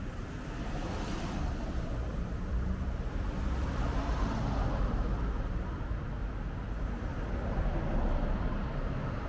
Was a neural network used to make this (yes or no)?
no